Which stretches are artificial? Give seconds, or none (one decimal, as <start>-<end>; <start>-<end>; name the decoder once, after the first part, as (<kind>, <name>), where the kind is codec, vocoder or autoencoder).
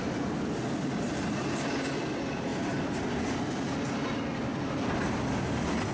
none